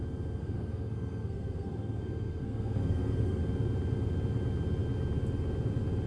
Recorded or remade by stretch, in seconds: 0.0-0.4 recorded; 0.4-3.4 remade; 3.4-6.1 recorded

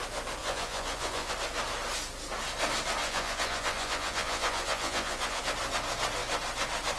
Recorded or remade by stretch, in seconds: 0.0-0.4 recorded; 0.4-1.3 remade; 1.3-3.0 recorded; 3.0-5.4 remade; 5.4-7.0 recorded

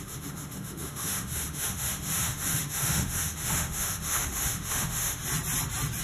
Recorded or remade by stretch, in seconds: 0.0-5.2 remade; 5.2-6.0 recorded

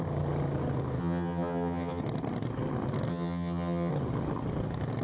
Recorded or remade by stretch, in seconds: 0.0-1.0 recorded; 1.0-2.0 remade; 2.0-3.1 recorded; 3.1-3.9 remade; 3.9-5.0 recorded